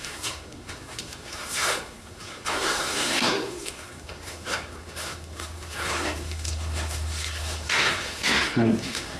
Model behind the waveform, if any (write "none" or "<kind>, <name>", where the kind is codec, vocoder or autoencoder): codec, SNAC